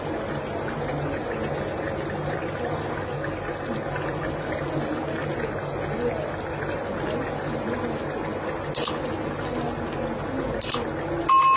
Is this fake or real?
real